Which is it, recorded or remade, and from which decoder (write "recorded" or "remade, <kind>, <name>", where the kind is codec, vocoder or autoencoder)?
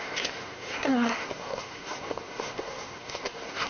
remade, codec, SNAC